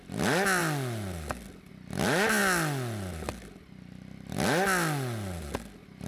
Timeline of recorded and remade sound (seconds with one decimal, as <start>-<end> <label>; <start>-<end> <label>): 0.0-6.1 recorded